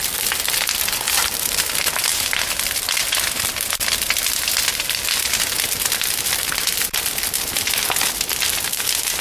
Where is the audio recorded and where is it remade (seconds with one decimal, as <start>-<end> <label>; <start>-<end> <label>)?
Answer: 0.0-9.2 recorded